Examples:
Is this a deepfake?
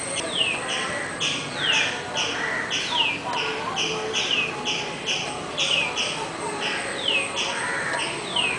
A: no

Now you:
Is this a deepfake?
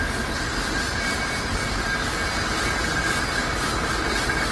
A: no